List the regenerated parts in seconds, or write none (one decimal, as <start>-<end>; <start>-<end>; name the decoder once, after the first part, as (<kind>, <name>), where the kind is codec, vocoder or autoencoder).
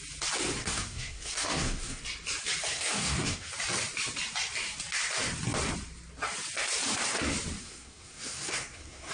0.6-2.0 (codec, SNAC); 2.7-3.5; 7.6-9.1